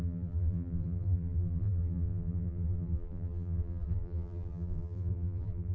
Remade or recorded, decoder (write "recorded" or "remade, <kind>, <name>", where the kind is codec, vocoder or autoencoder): remade, vocoder, BigVGAN v2